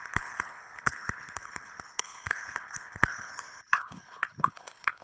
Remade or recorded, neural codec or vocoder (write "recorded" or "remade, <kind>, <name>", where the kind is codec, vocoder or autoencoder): remade, codec, HILCodec